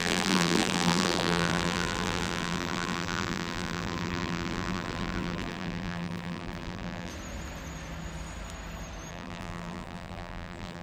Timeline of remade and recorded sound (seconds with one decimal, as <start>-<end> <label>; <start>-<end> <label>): 0.0-7.1 remade; 7.1-9.1 recorded; 9.1-10.8 remade